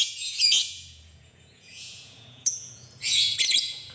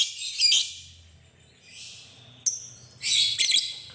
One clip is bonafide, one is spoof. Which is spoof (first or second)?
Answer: first